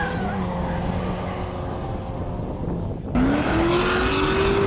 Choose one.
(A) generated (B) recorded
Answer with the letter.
B